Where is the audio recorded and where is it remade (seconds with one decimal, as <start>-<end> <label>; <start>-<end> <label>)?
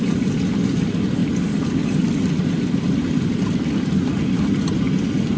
0.0-1.2 recorded; 1.2-4.4 remade; 4.4-5.4 recorded